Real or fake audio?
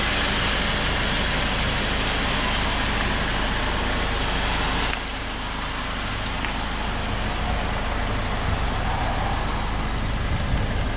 real